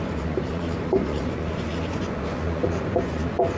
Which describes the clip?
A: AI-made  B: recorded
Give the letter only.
A